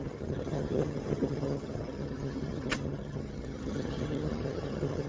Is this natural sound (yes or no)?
no